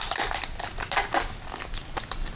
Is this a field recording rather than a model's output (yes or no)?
yes